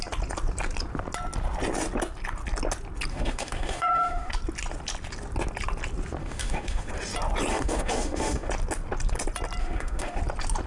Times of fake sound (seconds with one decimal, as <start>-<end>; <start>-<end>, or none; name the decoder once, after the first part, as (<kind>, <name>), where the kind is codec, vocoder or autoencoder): 3.1-4.3 (autoencoder, DAC-VAE); 6.2-6.9; 7.5-8.5; 9.6-10.2